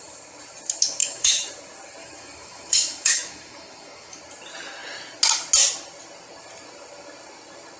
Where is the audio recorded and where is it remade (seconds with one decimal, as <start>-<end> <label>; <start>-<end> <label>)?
0.0-1.0 recorded; 1.0-1.5 remade; 1.5-2.0 recorded; 2.0-4.2 remade; 4.2-7.8 recorded